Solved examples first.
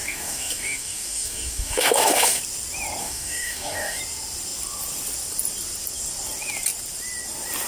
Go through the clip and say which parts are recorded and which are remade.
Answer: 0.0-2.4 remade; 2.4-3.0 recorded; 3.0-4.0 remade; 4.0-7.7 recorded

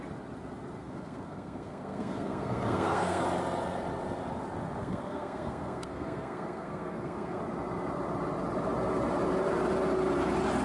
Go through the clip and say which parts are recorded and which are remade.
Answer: 0.0-0.8 recorded; 0.8-3.2 remade; 3.2-4.8 recorded; 4.8-7.4 remade; 7.4-10.6 recorded